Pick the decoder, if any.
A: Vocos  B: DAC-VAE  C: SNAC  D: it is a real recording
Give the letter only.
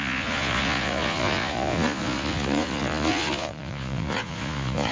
A